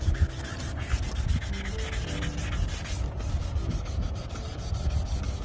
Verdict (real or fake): real